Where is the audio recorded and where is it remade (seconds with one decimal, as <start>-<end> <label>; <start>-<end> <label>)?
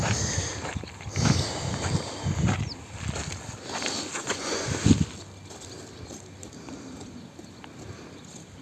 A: 0.0-4.2 recorded; 4.2-4.7 remade; 4.7-8.6 recorded